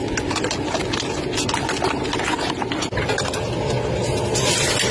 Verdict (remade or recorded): recorded